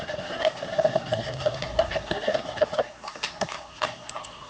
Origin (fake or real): fake